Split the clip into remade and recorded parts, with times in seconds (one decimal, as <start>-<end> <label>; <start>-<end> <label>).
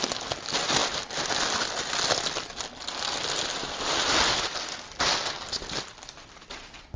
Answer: 0.0-0.8 recorded; 0.8-5.0 remade; 5.0-7.0 recorded